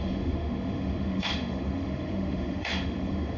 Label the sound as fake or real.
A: fake